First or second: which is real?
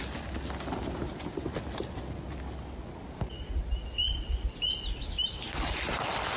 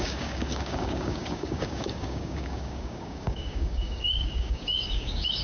first